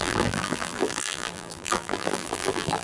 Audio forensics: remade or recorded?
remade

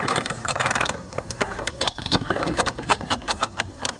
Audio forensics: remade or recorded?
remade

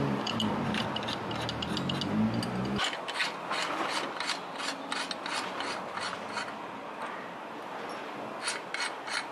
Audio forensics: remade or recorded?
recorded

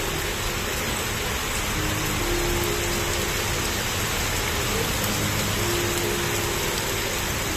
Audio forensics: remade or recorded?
recorded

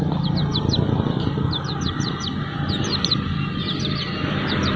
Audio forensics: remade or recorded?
recorded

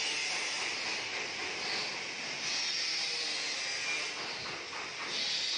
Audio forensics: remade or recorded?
recorded